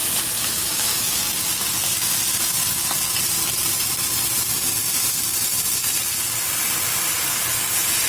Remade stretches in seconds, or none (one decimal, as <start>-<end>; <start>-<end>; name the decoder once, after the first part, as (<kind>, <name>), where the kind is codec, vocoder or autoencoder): 0.0-1.2 (autoencoder, DAC-VAE)